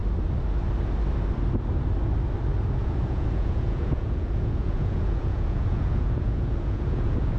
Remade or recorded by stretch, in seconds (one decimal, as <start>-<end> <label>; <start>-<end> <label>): 0.0-2.8 recorded; 2.8-7.4 remade